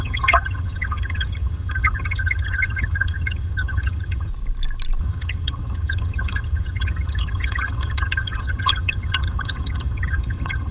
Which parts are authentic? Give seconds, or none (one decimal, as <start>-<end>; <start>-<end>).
4.3-5.0

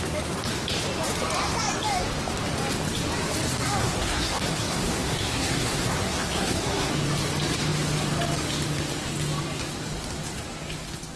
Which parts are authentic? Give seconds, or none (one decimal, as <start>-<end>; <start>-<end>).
0.0-3.8; 6.9-11.2

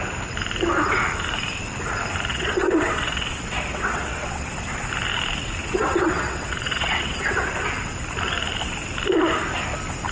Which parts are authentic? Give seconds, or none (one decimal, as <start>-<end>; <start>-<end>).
0.0-2.3; 4.5-5.6; 7.5-10.1

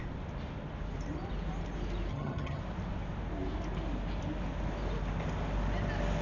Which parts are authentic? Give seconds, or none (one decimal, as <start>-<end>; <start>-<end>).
0.0-2.1; 2.6-6.2

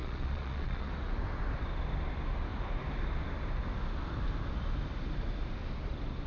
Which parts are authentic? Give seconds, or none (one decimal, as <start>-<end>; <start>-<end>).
0.9-6.3

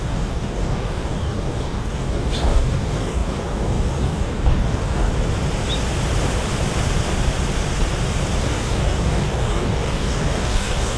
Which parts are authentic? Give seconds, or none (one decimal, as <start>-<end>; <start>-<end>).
5.1-8.4